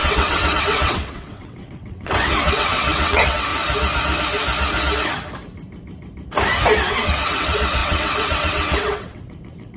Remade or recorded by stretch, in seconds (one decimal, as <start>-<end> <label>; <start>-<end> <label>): 0.0-3.5 remade; 3.5-6.9 recorded; 6.9-9.8 remade